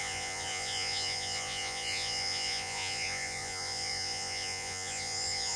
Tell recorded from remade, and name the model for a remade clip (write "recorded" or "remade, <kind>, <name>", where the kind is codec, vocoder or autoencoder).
remade, vocoder, Vocos